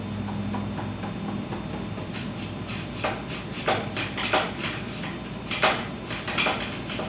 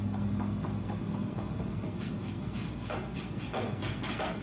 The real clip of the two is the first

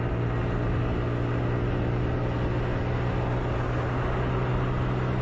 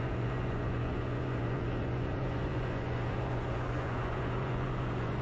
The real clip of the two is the first